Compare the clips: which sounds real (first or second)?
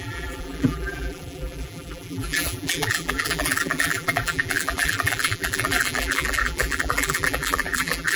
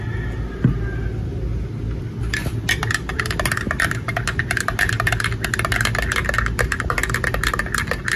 second